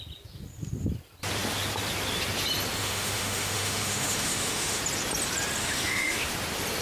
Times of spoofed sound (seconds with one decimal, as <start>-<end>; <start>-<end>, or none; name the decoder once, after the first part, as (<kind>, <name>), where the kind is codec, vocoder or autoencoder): 2.8-4.8 (autoencoder, DAC-VAE); 5.6-6.3